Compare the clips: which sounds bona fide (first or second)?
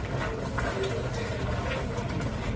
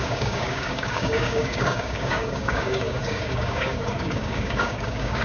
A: first